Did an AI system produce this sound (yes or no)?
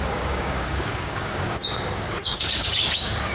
yes